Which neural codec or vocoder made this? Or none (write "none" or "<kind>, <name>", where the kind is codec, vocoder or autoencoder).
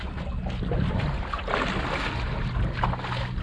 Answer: none